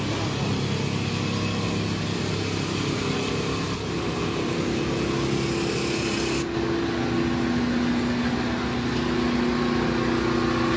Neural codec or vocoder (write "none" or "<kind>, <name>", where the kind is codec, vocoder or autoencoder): none